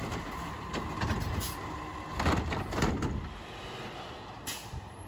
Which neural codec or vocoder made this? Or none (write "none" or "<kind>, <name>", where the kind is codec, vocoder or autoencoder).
none